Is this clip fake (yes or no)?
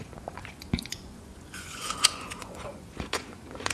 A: yes